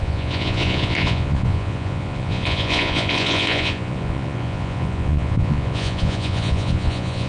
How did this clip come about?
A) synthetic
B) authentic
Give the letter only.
A